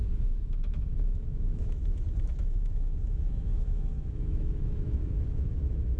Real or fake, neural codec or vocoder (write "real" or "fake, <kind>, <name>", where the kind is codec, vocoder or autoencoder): fake, autoencoder, DAC-VAE